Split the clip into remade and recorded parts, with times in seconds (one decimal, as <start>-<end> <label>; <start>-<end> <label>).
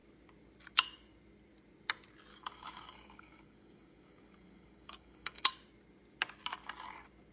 0.0-2.3 recorded; 2.3-5.5 remade; 5.5-7.3 recorded